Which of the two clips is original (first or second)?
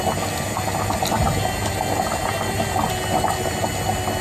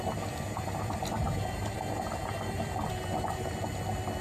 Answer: first